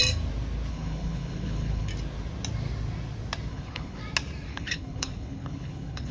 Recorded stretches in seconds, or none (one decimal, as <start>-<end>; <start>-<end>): 0.0-0.7; 1.9-3.5; 4.0-4.5